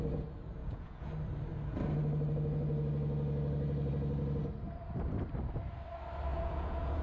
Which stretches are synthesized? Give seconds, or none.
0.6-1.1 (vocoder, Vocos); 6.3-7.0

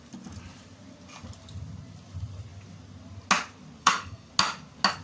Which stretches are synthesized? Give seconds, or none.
3.8-4.3 (codec, SNAC)

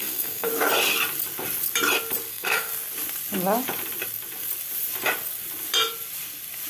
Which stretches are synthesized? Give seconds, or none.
0.0-0.5 (codec, SNAC); 2.3-2.7

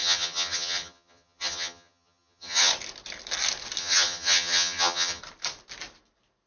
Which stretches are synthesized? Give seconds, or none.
0.0-2.7 (vocoder, HiFi-GAN); 3.8-5.2

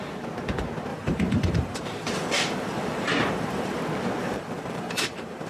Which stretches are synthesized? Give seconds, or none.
0.9-3.8 (vocoder, BigVGAN v2); 4.2-5.5

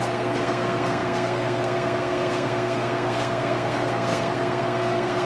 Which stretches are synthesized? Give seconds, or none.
0.0-5.3 (codec, SNAC)

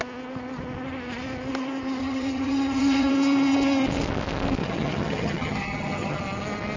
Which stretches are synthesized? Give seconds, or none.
2.0-3.1 (vocoder, HiFi-GAN); 4.6-6.2

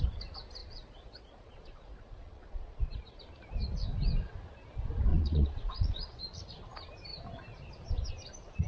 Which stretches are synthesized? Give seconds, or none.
0.6-3.2 (vocoder, Vocos); 5.1-6.2